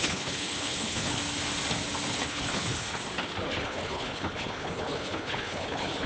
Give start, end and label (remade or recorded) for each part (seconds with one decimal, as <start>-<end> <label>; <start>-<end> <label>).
0.0-1.2 remade; 1.2-2.1 recorded; 2.1-3.0 remade; 3.0-3.6 recorded; 3.6-6.1 remade